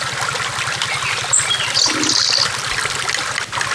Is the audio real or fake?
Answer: real